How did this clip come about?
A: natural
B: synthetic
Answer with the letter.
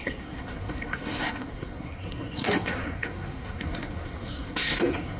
B